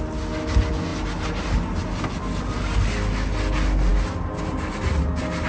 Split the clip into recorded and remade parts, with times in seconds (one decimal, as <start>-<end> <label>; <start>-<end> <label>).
0.0-5.5 recorded